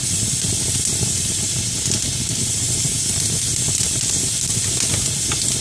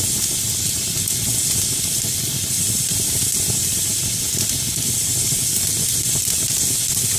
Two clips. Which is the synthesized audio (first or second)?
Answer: second